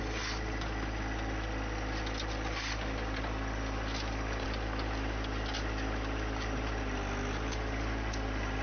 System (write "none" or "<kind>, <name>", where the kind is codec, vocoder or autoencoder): none